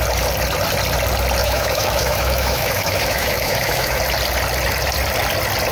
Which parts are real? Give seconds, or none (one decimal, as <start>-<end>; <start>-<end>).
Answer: 0.0-1.4; 4.0-5.7